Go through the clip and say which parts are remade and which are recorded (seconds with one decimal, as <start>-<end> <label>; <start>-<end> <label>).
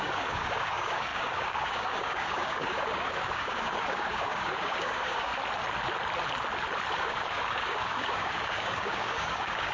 0.0-5.3 remade; 5.3-7.0 recorded; 7.0-9.7 remade